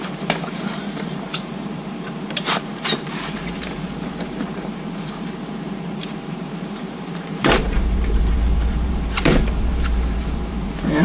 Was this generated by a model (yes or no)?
yes